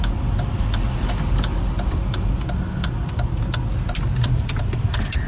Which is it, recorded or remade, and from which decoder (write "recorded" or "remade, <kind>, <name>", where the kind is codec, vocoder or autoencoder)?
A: recorded